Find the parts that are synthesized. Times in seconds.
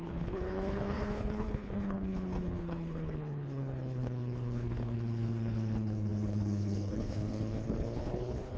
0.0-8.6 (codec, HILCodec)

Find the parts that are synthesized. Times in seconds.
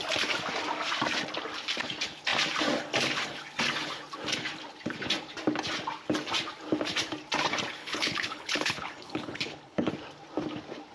7.8-9.9 (codec, HILCodec)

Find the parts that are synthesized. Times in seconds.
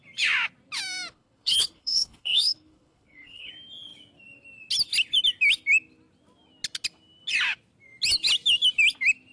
1.1-3.5 (codec, HILCodec)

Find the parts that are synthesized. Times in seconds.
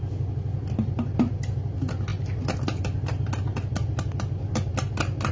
none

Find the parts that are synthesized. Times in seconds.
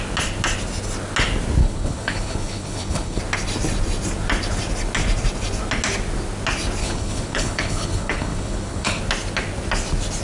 1.6-3.2 (codec, HILCodec); 6.8-9.0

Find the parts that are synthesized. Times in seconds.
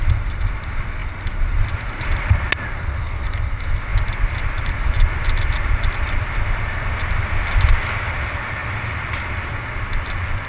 none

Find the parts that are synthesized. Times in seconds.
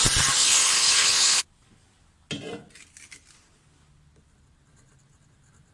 0.4-1.4 (codec, HILCodec)